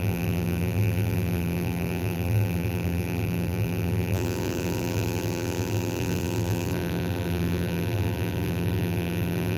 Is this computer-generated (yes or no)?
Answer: yes